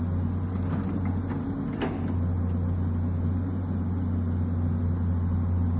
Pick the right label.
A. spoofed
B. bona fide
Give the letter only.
B